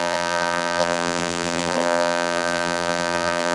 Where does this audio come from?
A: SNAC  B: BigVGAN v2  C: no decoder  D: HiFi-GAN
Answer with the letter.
B